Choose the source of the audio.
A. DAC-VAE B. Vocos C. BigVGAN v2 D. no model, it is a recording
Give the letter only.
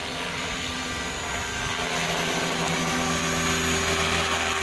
D